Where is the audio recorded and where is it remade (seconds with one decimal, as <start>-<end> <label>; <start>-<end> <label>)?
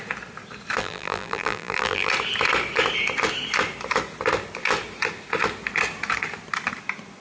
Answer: 0.0-0.8 recorded; 0.8-2.1 remade; 2.1-7.2 recorded